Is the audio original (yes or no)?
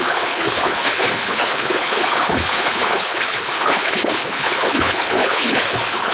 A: no